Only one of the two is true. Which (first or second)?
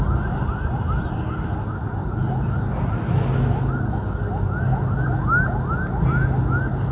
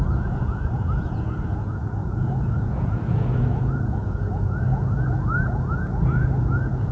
first